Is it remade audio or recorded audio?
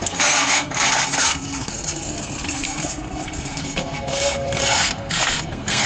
remade